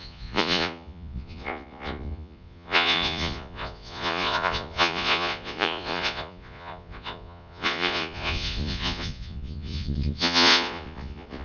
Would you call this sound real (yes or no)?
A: no